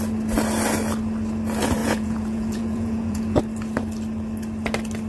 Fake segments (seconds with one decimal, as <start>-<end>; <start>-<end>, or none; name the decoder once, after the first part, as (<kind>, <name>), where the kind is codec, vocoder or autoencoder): 1.8-3.4 (vocoder, Vocos)